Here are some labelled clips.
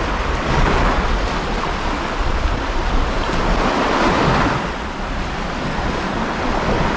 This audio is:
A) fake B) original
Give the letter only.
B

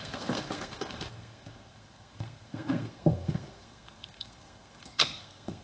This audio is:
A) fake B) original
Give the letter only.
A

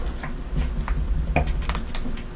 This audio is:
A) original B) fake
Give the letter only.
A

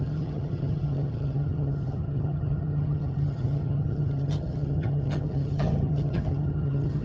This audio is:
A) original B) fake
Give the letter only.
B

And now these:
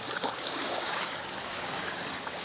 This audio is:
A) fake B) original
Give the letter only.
A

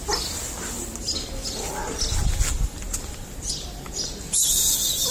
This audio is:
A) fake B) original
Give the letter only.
B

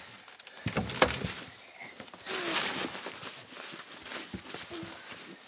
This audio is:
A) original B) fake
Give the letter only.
A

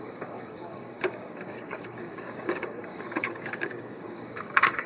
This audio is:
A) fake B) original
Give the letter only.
A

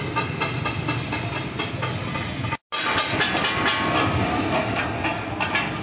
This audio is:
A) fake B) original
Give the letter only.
B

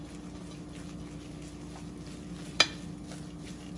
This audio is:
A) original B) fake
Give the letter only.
A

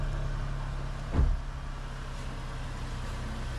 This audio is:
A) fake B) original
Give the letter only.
B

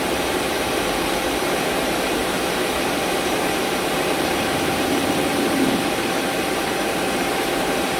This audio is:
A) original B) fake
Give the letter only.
B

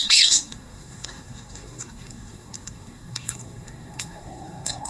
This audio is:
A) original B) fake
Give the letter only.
B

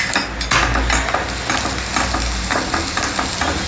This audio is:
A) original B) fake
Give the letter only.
A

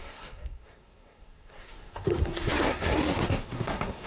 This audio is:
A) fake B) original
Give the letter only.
A